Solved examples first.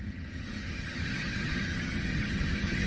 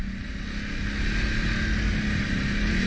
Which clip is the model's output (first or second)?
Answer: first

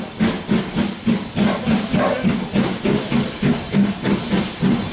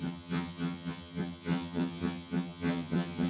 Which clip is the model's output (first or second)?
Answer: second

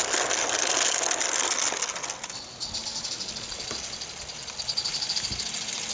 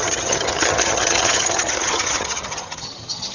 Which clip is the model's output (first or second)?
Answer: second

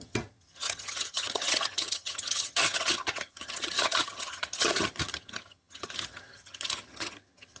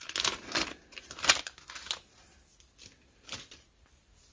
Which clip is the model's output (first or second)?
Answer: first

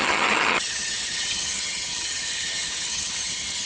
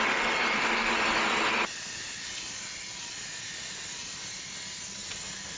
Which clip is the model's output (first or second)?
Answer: first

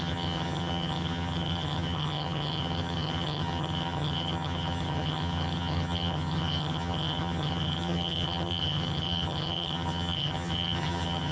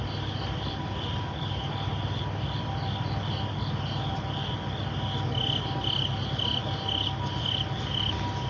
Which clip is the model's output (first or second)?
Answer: first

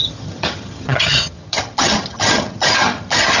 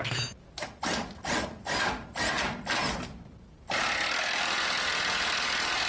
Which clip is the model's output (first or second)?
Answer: first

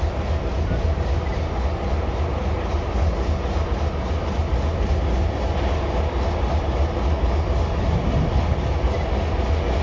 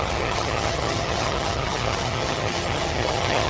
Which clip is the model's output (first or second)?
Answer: second